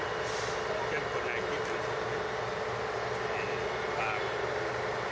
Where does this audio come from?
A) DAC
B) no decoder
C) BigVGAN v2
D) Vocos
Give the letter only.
B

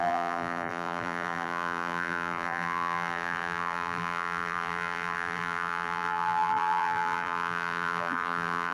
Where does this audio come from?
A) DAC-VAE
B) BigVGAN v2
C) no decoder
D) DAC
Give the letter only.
B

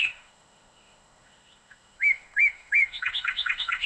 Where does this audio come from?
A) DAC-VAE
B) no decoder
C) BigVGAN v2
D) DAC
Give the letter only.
A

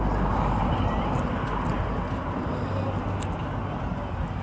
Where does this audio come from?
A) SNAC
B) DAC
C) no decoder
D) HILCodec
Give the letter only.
C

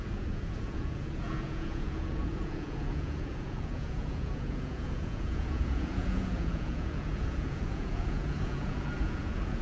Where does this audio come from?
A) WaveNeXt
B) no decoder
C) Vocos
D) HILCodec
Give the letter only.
C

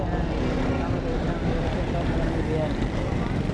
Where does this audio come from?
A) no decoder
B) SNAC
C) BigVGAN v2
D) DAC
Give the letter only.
A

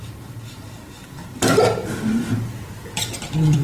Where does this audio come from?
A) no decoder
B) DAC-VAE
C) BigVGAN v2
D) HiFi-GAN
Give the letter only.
C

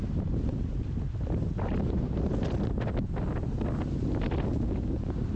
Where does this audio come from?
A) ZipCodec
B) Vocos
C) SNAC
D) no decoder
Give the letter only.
D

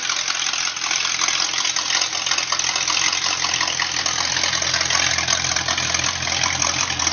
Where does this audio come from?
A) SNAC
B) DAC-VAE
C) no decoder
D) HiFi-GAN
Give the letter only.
C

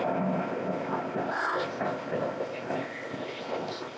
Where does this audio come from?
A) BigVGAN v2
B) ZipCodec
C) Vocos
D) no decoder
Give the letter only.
B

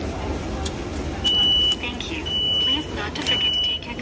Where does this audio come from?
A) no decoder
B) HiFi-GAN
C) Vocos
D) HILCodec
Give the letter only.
A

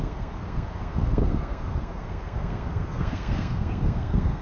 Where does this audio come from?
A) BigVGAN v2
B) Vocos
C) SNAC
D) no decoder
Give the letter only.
C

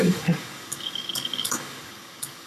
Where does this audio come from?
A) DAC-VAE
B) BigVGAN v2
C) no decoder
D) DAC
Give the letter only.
D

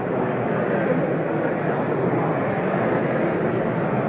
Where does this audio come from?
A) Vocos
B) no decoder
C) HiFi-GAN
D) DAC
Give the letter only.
B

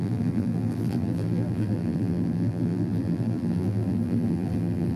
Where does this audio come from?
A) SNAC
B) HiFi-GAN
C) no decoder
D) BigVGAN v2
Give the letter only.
D